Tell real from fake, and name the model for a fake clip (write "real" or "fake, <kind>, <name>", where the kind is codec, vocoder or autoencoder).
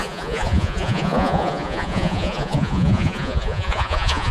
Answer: fake, vocoder, Vocos